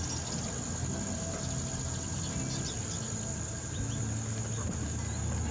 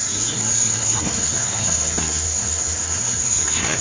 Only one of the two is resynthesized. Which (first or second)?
second